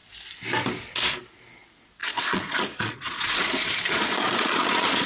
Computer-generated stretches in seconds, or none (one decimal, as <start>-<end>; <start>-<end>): 2.0-5.1